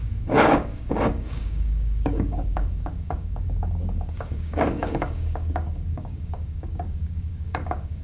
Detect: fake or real fake